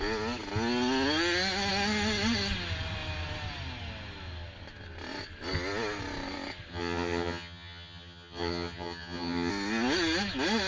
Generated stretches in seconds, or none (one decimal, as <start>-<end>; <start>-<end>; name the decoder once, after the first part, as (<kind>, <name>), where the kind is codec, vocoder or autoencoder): 6.7-9.5 (vocoder, HiFi-GAN)